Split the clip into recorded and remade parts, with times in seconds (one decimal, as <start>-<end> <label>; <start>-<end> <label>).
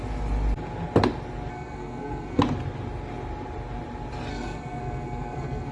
0.0-1.5 recorded; 1.5-2.4 remade; 2.4-4.3 recorded; 4.3-5.7 remade